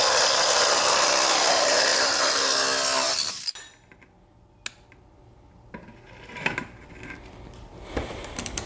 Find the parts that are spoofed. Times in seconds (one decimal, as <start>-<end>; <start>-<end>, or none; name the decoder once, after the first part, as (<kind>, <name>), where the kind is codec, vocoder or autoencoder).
none